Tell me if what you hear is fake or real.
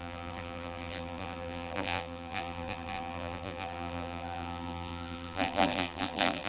fake